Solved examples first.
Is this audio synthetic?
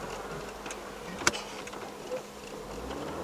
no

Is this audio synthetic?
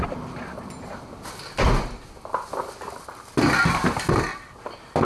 no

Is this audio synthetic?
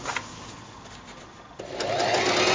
no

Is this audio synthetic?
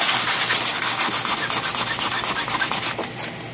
no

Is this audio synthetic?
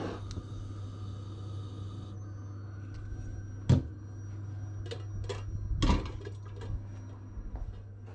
no